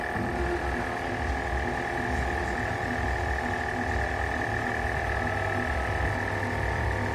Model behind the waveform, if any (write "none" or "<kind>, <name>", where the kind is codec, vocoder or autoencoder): none